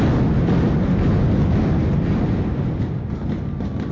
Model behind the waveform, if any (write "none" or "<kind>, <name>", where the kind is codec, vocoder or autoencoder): none